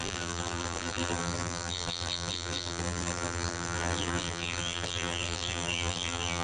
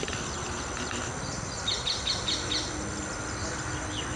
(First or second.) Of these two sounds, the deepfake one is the first